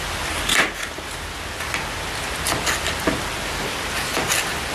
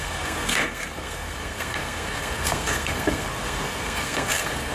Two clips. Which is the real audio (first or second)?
first